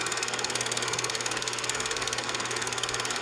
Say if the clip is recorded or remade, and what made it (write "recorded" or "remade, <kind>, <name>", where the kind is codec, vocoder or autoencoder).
remade, codec, SNAC